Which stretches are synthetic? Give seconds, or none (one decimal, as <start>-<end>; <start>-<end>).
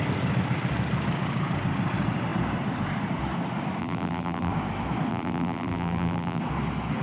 3.8-4.5; 5.1-6.4